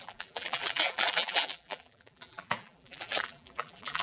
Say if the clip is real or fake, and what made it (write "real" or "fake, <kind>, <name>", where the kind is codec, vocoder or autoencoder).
fake, vocoder, BigVGAN v2